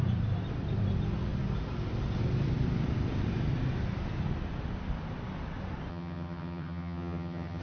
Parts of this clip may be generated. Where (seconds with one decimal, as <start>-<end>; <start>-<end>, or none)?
5.9-7.6